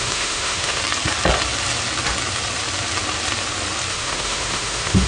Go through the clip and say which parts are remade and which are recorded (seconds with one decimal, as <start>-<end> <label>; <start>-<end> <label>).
0.0-0.8 remade; 0.8-3.9 recorded; 3.9-5.1 remade